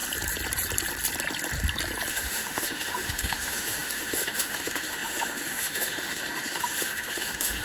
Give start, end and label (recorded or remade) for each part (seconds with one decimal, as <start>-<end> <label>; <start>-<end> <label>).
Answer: 0.0-2.1 recorded; 2.1-7.6 remade